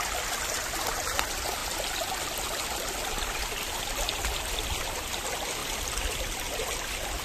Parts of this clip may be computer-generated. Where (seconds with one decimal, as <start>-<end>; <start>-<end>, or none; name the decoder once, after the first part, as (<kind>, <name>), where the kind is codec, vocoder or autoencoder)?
none